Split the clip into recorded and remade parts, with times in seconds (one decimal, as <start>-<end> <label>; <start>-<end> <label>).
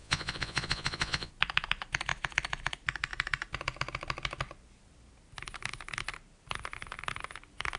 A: 0.0-1.3 remade; 1.3-7.8 recorded